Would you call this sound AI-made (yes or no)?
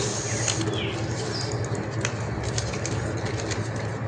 no